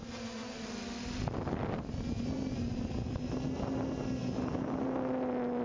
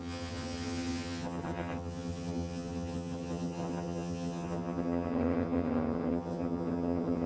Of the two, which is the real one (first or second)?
first